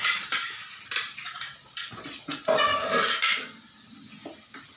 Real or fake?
real